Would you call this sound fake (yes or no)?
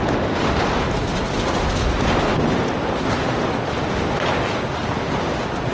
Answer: no